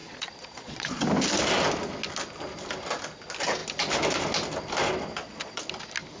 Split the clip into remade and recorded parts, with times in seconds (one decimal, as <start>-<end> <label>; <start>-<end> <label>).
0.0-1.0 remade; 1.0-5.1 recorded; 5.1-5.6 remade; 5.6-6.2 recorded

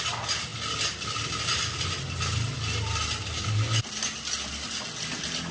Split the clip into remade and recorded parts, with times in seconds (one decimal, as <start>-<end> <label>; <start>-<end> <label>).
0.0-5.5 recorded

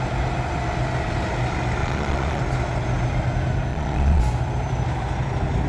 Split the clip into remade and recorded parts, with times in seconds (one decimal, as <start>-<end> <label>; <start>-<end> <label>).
0.0-1.8 recorded; 1.8-2.4 remade; 2.4-3.7 recorded; 3.7-4.2 remade; 4.2-5.7 recorded